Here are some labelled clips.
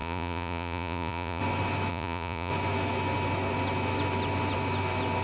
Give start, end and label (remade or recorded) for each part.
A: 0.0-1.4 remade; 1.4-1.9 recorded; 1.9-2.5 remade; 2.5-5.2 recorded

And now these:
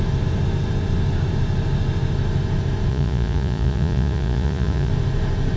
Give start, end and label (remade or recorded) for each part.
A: 0.0-2.9 recorded; 2.9-4.9 remade; 4.9-5.6 recorded

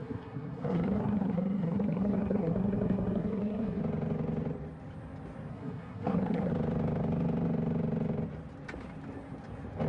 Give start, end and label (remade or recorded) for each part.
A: 0.0-3.8 remade; 3.8-5.5 recorded; 5.5-6.5 remade; 6.5-9.9 recorded

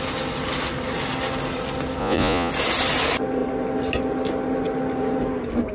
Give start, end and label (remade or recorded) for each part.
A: 0.0-2.0 recorded; 2.0-2.5 remade; 2.5-5.7 recorded

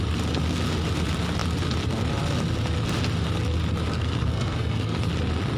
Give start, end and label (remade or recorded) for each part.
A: 0.0-3.9 recorded; 3.9-5.0 remade; 5.0-5.6 recorded